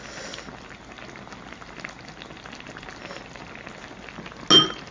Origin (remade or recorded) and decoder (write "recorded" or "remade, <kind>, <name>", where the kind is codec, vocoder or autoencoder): recorded